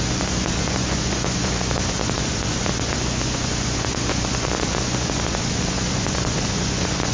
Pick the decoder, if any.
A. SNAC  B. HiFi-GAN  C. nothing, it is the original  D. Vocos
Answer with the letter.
D